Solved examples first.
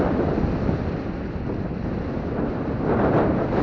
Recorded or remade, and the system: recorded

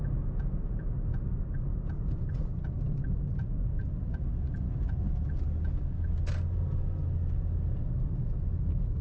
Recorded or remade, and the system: recorded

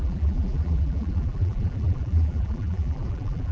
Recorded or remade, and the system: remade, vocoder, BigVGAN v2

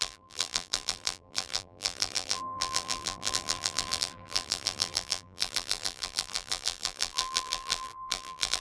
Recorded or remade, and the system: remade, vocoder, BigVGAN v2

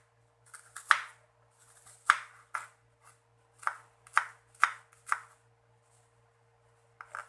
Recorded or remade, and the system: recorded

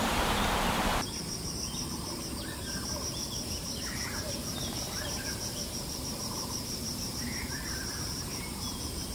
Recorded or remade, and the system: remade, vocoder, BigVGAN v2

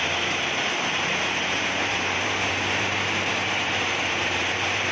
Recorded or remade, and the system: remade, vocoder, BigVGAN v2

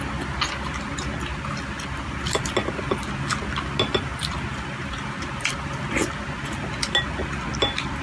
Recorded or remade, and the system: recorded